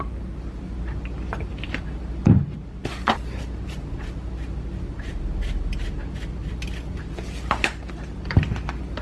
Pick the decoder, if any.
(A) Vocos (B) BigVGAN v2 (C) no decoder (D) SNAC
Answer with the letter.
B